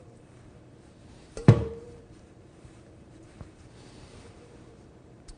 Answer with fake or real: fake